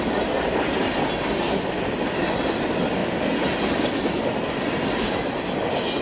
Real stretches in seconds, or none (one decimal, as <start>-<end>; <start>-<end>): 0.0-6.0